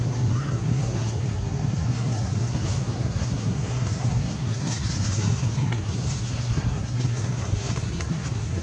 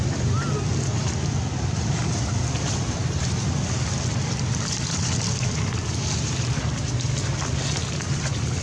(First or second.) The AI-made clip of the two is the first